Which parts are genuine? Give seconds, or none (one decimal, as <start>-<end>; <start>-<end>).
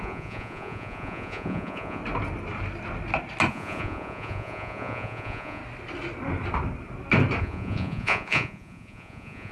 2.0-3.5; 5.6-7.4